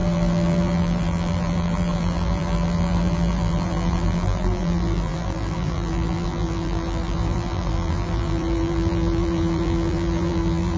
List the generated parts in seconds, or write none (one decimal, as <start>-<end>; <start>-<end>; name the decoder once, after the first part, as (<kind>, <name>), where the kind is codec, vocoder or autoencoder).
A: 0.0-10.8 (vocoder, BigVGAN v2)